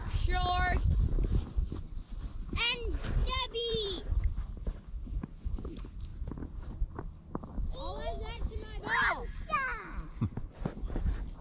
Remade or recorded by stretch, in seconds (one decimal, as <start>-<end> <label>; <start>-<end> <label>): 0.0-3.2 recorded; 3.2-5.5 remade; 5.5-11.4 recorded